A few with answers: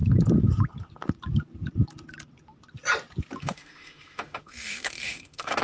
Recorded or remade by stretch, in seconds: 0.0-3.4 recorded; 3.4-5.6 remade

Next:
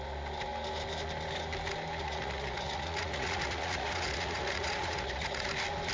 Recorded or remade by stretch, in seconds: 0.0-2.0 recorded; 2.0-5.5 remade; 5.5-5.9 recorded